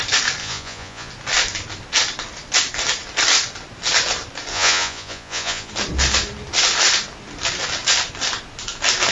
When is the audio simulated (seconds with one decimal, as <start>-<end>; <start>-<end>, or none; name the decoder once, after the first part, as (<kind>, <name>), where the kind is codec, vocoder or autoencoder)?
0.4-1.1 (vocoder, Vocos); 4.5-5.7